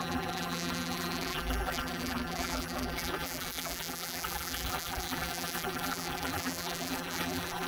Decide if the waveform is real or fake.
fake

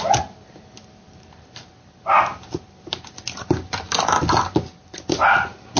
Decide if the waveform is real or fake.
real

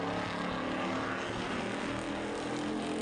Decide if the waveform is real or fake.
real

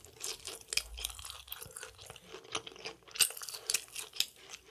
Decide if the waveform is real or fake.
real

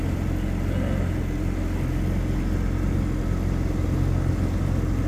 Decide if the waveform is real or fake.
real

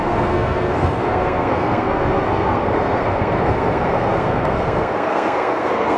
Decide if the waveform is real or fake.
fake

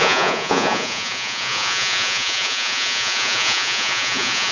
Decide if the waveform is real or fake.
fake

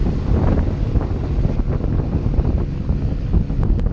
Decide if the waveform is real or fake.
real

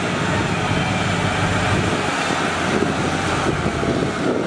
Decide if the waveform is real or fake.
real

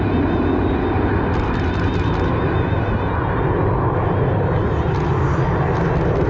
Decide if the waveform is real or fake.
real